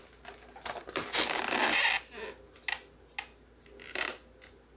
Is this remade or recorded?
recorded